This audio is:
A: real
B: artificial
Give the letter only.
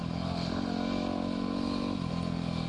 A